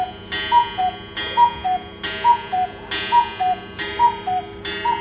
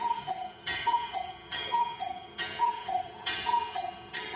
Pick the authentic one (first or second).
first